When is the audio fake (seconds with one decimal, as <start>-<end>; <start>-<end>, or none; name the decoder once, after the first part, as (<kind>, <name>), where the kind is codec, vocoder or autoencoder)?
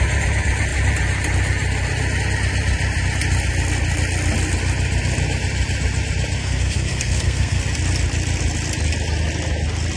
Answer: 6.4-7.6 (codec, SNAC)